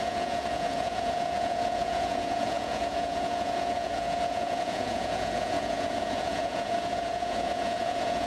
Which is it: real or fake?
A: fake